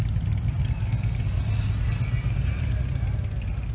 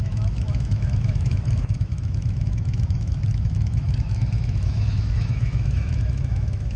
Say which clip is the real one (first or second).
first